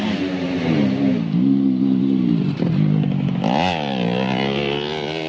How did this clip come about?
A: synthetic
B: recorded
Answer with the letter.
B